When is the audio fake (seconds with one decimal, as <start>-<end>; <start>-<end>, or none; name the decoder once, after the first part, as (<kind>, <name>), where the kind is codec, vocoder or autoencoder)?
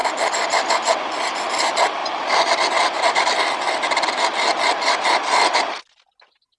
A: none